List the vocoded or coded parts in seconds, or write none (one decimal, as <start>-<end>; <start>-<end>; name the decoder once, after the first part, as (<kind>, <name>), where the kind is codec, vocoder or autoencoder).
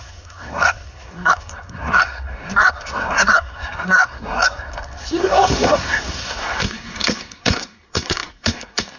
0.0-9.0 (codec, SNAC)